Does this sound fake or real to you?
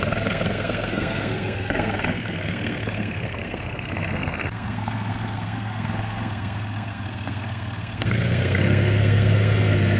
fake